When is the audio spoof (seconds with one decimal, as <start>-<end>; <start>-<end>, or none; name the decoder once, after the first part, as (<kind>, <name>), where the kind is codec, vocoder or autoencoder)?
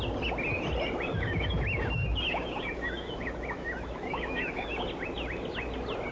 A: 1.1-4.8 (autoencoder, DAC-VAE)